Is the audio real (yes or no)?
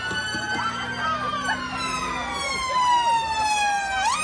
yes